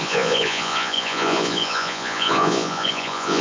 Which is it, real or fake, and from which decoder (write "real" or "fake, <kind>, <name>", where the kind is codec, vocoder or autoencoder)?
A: fake, vocoder, Vocos